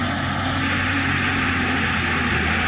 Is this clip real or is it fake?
real